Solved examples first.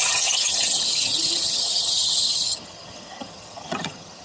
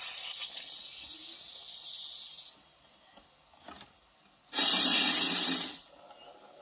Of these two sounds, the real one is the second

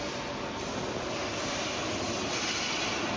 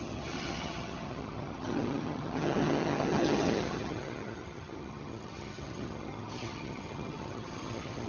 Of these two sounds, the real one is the first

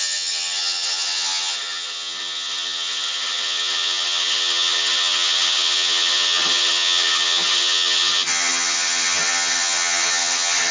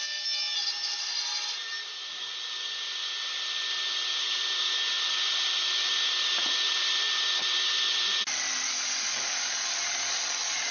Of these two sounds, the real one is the second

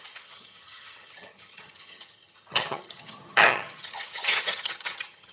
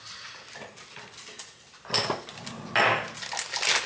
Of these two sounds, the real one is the second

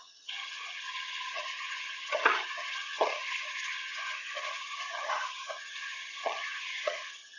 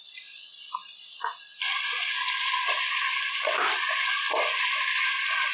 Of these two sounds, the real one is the second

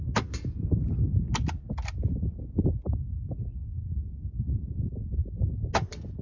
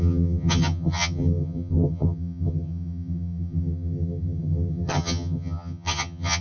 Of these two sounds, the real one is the first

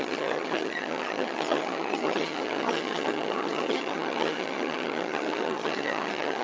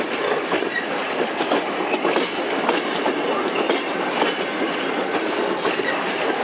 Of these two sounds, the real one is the second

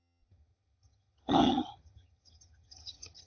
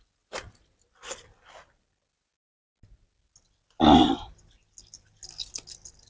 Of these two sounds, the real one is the second